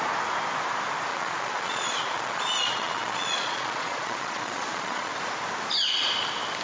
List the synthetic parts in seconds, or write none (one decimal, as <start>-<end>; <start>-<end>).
1.1-5.1